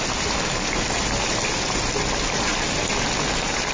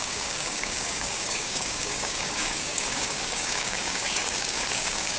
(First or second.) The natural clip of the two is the first